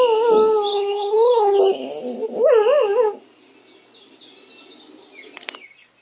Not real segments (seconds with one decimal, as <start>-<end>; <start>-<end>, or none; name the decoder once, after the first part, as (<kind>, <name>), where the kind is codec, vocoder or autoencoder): 0.7-1.6 (codec, HILCodec)